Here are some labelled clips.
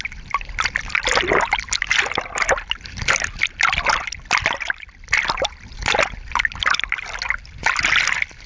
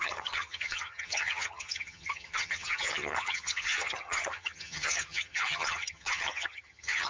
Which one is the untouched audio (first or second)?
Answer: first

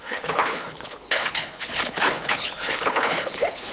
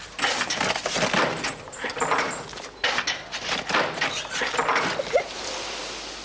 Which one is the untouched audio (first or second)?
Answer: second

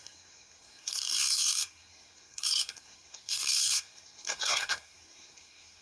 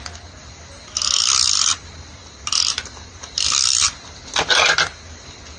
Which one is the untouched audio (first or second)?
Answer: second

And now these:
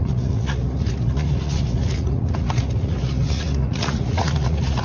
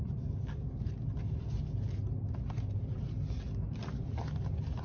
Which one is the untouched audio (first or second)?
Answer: second